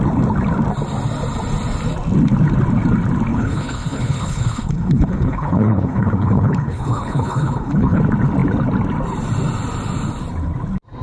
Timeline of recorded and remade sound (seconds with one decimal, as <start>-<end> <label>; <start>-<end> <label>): 0.0-3.3 recorded; 3.3-8.0 remade; 8.0-11.0 recorded